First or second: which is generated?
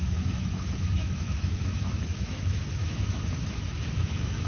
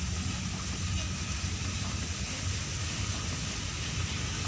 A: first